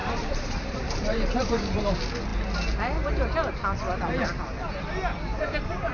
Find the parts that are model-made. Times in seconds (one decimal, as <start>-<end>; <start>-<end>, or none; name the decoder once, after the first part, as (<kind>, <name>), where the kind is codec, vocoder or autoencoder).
0.0-1.9 (vocoder, BigVGAN v2); 5.3-5.9